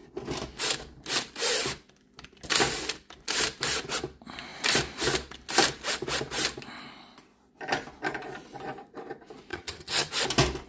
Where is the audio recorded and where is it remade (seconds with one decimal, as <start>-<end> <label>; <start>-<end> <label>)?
0.0-9.5 recorded; 9.5-10.1 remade; 10.1-10.7 recorded